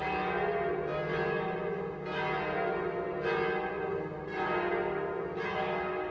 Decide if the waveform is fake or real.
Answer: real